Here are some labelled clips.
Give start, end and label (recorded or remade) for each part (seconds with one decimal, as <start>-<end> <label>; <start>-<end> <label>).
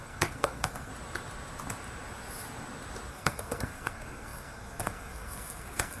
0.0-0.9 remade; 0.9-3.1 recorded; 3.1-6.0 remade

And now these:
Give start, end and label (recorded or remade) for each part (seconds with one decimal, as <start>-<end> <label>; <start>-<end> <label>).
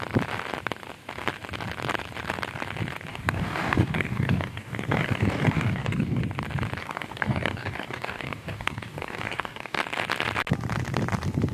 0.0-3.1 recorded; 3.1-6.2 remade; 6.2-6.8 recorded; 6.8-9.8 remade; 9.8-11.5 recorded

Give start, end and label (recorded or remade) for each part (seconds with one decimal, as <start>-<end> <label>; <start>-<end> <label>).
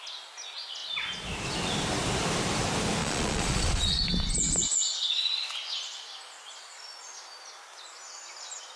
0.0-3.0 recorded; 3.0-4.0 remade; 4.0-8.8 recorded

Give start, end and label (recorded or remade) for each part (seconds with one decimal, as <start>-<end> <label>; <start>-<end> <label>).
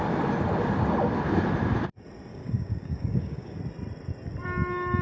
0.0-2.3 recorded; 2.3-3.6 remade; 3.6-5.0 recorded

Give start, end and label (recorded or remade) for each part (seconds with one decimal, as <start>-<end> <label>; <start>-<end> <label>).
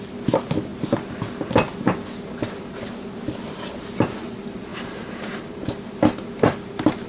0.0-4.7 recorded; 4.7-6.0 remade; 6.0-7.1 recorded